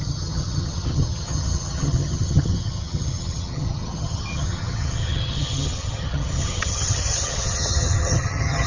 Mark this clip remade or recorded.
remade